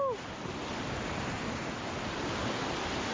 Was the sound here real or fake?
real